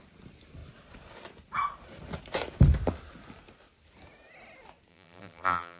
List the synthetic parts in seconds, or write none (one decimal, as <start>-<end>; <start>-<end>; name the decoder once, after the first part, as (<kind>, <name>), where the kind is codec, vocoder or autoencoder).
4.9-5.8 (vocoder, BigVGAN v2)